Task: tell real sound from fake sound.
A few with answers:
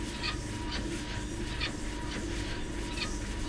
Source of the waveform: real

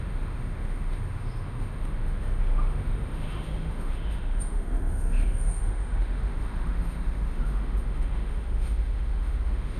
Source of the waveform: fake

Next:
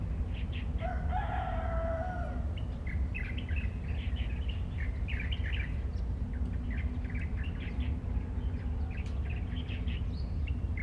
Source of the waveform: real